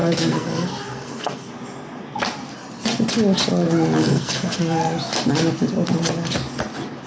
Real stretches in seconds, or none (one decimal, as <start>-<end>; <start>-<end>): 1.5-4.0; 4.8-7.1